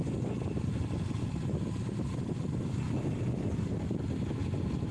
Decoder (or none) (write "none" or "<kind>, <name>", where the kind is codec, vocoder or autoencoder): none